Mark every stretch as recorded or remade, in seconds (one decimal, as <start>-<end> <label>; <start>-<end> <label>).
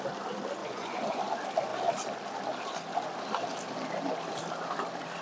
0.0-0.6 recorded; 0.6-1.2 remade; 1.2-5.2 recorded